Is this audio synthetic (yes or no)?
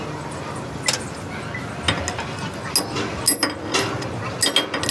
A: no